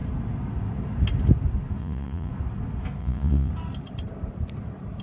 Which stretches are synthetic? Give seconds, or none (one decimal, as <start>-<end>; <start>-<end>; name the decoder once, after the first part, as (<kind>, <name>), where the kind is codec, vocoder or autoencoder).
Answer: 1.8-2.3 (vocoder, Vocos); 3.0-3.5